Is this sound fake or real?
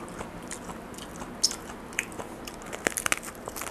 real